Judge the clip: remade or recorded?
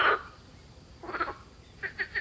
recorded